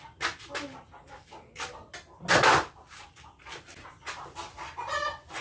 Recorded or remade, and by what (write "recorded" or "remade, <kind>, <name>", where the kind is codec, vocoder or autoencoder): recorded